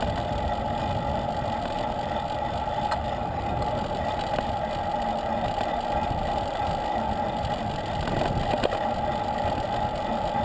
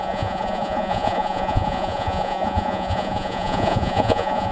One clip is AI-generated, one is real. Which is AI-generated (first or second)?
second